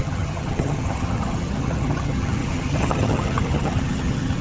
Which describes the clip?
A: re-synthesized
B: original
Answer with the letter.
A